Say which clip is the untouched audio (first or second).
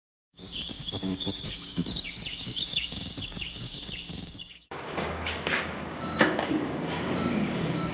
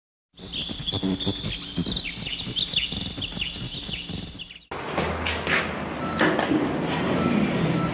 second